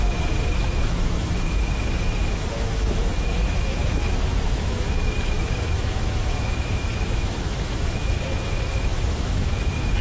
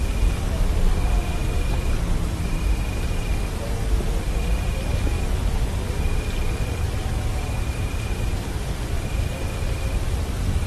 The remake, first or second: first